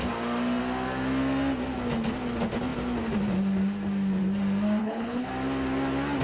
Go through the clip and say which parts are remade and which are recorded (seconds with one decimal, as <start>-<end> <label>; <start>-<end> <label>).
0.0-4.8 recorded; 4.8-5.3 remade; 5.3-6.2 recorded